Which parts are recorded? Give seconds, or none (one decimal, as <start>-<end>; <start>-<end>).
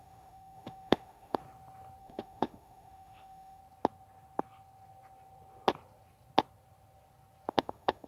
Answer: 1.4-2.0; 3.6-7.5